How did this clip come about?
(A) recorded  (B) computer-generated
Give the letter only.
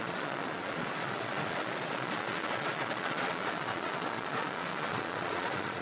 B